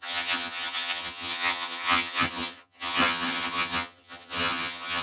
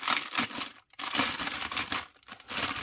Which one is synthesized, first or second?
first